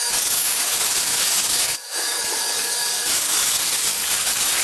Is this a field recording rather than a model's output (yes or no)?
no